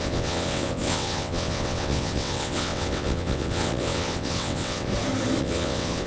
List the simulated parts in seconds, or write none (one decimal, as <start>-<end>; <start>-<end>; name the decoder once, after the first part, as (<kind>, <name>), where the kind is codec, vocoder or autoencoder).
0.0-4.9 (vocoder, WaveNeXt); 5.4-6.1